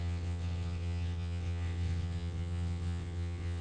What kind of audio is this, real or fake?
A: fake